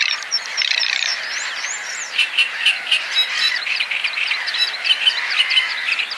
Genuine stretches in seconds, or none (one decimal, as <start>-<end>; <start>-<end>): none

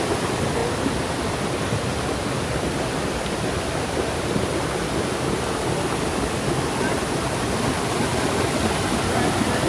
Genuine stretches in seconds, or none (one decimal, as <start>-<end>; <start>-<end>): 0.0-9.7

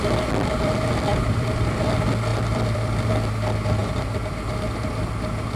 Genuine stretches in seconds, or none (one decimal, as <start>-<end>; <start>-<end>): 0.0-1.1; 1.8-2.3; 3.1-3.8; 4.5-5.6

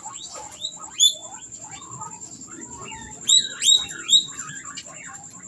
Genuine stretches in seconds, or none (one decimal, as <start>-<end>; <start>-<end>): 0.0-5.5

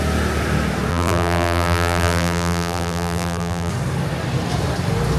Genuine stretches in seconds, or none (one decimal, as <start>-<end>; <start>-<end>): 0.0-0.9; 3.7-5.2

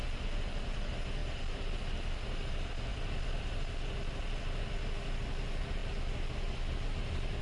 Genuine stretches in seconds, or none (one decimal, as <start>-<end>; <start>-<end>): 0.0-2.9; 3.4-7.4

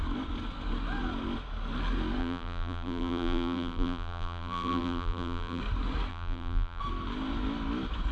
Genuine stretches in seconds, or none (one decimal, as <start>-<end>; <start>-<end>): 0.0-2.2; 5.6-6.1; 6.8-8.1

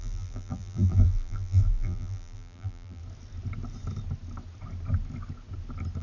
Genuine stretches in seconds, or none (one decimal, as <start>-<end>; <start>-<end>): 3.0-6.0